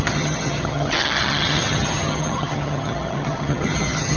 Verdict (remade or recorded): remade